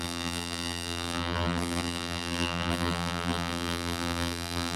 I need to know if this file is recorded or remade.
remade